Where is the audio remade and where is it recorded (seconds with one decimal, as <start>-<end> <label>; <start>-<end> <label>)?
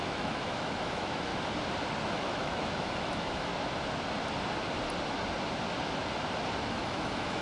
0.0-1.3 remade; 1.3-2.0 recorded; 2.0-3.5 remade; 3.5-6.7 recorded; 6.7-7.4 remade